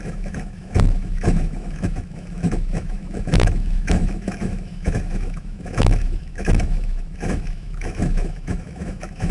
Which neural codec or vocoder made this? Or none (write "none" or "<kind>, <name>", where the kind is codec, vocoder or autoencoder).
autoencoder, DAC-VAE